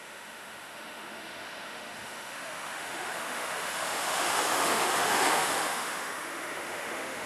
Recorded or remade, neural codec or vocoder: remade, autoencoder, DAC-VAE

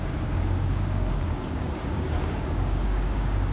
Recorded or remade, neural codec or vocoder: remade, codec, DAC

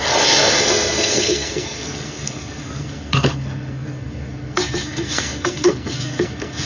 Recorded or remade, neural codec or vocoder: remade, codec, SNAC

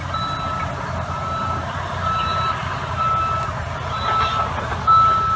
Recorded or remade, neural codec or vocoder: recorded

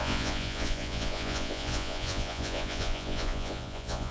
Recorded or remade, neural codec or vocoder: remade, vocoder, Vocos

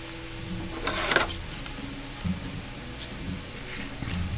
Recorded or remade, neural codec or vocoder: recorded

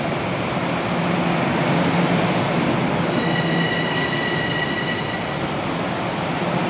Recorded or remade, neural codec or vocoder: recorded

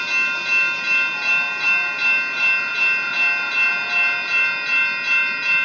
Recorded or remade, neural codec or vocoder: recorded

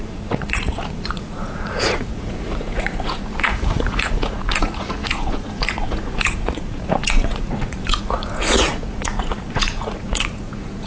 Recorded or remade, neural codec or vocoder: remade, vocoder, Vocos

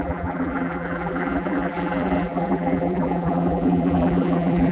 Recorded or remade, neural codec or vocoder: remade, vocoder, BigVGAN v2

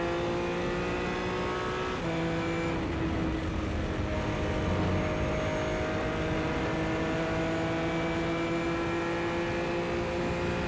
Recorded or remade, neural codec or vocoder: recorded